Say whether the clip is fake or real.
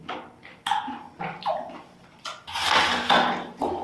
real